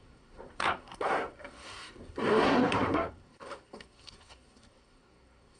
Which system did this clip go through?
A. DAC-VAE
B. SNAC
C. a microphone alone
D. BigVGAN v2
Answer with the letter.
B